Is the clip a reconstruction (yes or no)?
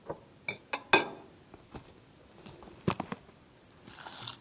no